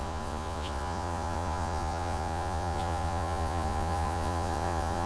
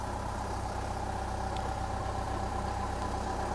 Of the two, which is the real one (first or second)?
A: second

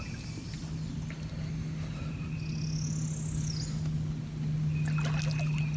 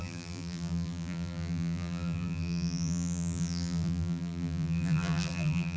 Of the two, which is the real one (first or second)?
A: first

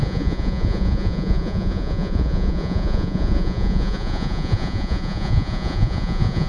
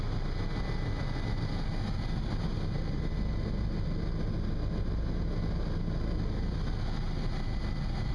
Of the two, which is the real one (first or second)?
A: second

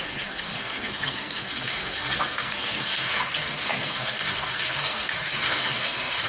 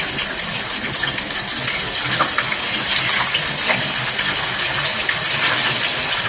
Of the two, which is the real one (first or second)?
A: second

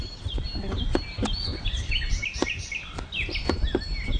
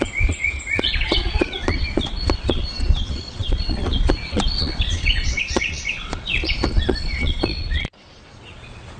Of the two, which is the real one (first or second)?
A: first